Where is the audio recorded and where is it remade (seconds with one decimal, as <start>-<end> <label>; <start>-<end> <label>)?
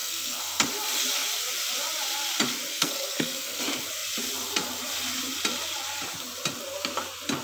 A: 0.0-0.7 remade; 0.7-2.7 recorded; 2.7-3.6 remade; 3.6-7.4 recorded